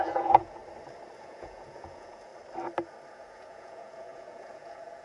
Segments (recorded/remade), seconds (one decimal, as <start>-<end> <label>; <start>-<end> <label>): 0.0-0.6 remade; 0.6-1.2 recorded; 1.2-2.3 remade; 2.3-3.1 recorded; 3.1-5.0 remade